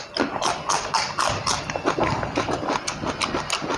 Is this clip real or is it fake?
real